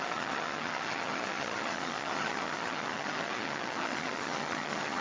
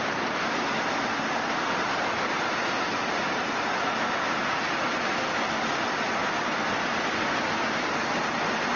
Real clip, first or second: second